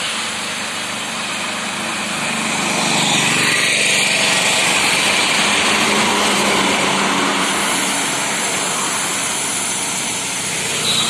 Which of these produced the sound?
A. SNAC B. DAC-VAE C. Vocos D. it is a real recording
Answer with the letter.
D